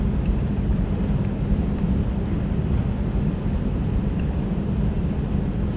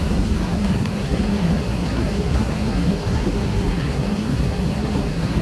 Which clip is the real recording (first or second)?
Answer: first